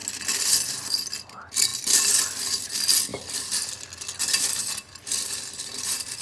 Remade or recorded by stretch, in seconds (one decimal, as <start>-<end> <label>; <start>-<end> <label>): 0.0-1.2 recorded; 1.2-3.1 remade; 3.1-4.4 recorded; 4.4-6.2 remade

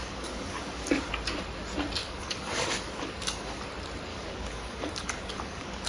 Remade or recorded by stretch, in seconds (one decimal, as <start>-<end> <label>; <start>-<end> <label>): 0.0-1.1 remade; 1.1-2.0 recorded; 2.0-3.6 remade; 3.6-4.1 recorded; 4.1-5.9 remade

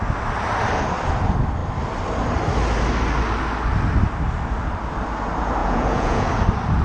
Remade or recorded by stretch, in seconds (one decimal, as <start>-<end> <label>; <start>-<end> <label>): 0.0-5.6 recorded; 5.6-6.3 remade; 6.3-6.8 recorded

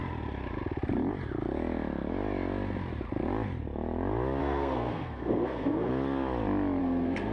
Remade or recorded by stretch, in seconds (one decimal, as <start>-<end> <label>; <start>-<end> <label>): 0.0-4.4 recorded; 4.4-5.9 remade; 5.9-6.8 recorded; 6.8-7.3 remade

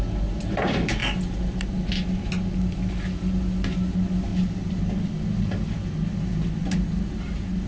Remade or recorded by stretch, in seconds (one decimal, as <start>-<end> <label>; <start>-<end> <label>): 0.0-7.7 recorded